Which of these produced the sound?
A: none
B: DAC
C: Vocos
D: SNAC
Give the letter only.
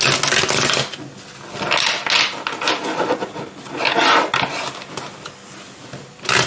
A